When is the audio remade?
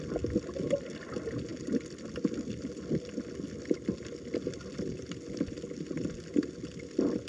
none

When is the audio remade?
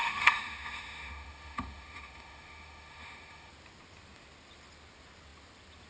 0.0-3.5 (autoencoder, DAC-VAE)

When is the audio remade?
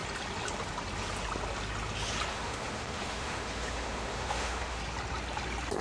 2.3-4.8 (autoencoder, DAC-VAE)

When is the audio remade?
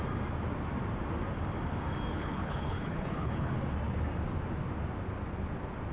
2.1-3.5 (codec, HILCodec)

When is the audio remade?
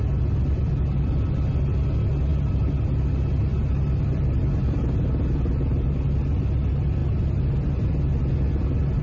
none